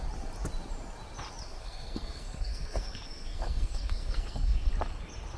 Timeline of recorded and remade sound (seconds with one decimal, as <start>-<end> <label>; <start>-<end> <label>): 0.0-1.5 recorded; 1.5-4.7 remade; 4.7-5.4 recorded